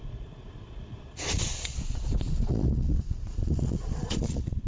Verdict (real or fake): fake